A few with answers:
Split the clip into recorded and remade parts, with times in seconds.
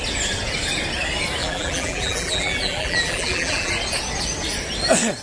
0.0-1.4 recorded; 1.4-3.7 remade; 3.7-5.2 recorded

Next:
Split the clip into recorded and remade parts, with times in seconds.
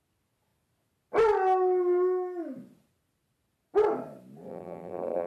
0.0-4.5 recorded; 4.5-5.3 remade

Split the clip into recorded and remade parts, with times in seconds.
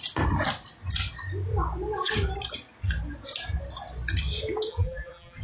0.0-4.7 recorded; 4.7-5.4 remade